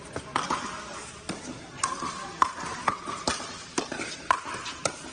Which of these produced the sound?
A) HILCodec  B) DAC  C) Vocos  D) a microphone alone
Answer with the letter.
D